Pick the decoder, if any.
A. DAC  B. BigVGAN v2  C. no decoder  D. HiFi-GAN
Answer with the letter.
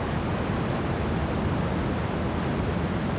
C